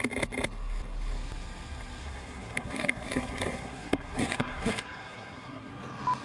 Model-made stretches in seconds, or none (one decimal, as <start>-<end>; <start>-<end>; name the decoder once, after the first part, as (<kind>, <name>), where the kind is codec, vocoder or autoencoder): 2.0-5.7 (codec, SNAC)